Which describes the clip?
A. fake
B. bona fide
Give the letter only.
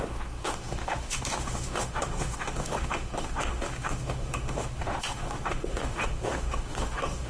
A